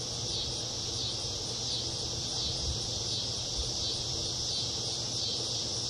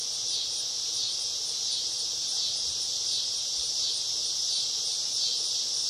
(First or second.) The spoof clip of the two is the second